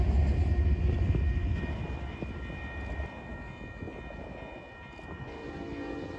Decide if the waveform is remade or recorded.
recorded